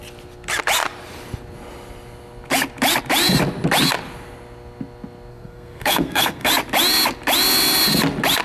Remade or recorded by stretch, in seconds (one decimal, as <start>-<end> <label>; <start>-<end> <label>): 0.0-5.3 recorded; 5.3-6.5 remade; 6.5-8.4 recorded